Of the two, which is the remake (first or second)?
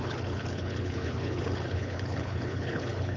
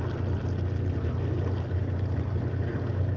first